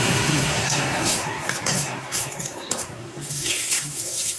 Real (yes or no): no